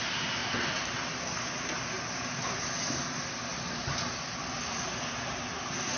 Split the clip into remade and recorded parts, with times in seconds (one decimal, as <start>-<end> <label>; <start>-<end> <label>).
0.0-6.0 recorded